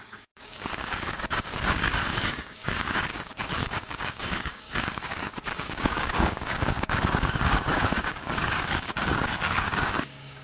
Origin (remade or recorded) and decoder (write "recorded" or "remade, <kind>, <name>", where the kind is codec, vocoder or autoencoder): remade, codec, DAC